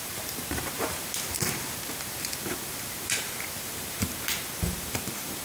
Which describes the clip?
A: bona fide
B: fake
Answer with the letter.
B